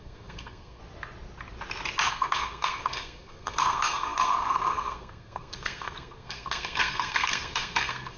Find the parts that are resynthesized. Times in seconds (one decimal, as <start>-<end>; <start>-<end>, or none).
0.0-0.8; 2.1-8.2